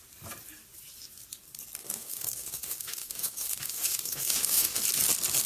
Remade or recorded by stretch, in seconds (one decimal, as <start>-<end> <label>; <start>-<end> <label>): 0.0-1.8 recorded; 1.8-4.8 remade; 4.8-5.5 recorded